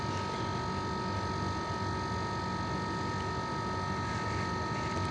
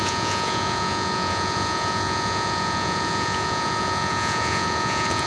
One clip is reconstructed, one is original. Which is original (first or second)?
first